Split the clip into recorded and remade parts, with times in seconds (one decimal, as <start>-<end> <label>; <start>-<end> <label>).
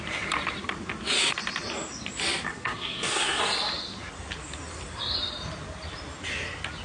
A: 0.0-2.5 recorded; 2.5-3.4 remade; 3.4-6.8 recorded